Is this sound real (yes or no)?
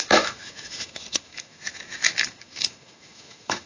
no